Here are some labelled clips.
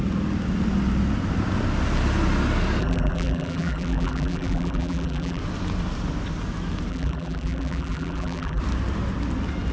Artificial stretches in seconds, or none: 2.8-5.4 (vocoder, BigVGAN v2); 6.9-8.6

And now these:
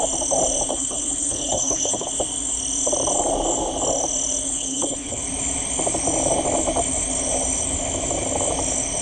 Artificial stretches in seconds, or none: 0.7-2.1 (codec, HILCodec); 4.5-5.2